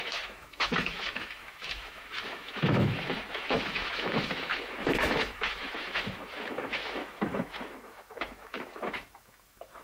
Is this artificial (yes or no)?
yes